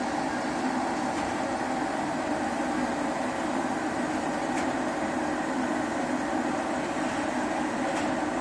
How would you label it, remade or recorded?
recorded